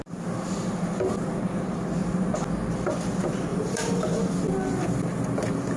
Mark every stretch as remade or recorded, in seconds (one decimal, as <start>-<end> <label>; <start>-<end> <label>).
0.0-3.5 recorded; 3.5-4.3 remade; 4.3-5.8 recorded